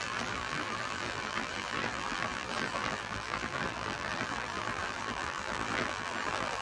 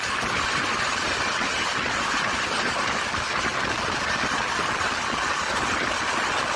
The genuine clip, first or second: second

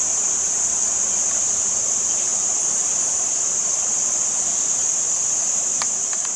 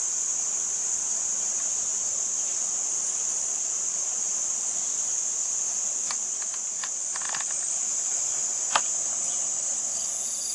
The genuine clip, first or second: second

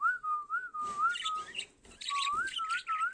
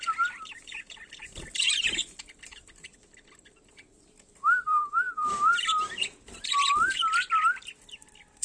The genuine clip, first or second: first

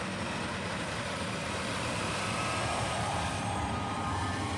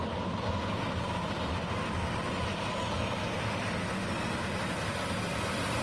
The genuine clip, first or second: second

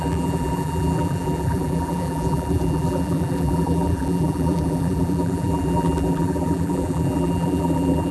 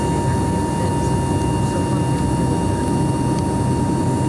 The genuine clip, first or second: second